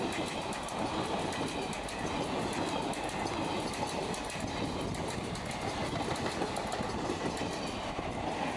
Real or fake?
real